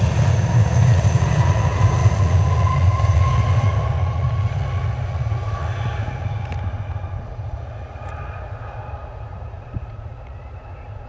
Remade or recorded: remade